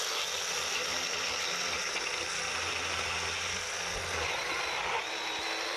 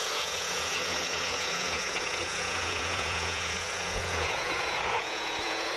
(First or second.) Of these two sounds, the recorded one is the first